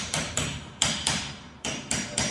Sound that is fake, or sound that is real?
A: fake